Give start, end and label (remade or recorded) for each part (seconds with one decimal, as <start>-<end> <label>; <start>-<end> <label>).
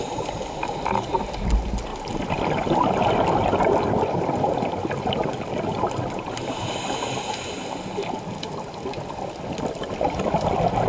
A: 0.0-10.9 recorded